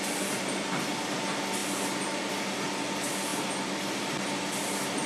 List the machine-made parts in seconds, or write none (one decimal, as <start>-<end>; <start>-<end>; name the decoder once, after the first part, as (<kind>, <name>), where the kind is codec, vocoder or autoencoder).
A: none